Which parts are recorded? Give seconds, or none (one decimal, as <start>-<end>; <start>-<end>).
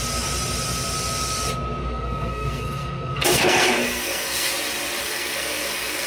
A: 0.0-1.8; 4.5-5.0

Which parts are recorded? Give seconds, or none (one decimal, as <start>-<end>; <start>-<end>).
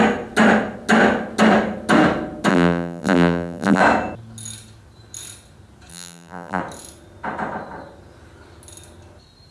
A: 0.0-2.5; 3.8-5.9; 6.6-9.5